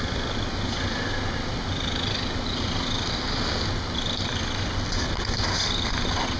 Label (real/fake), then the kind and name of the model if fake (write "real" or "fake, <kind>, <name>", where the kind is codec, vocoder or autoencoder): real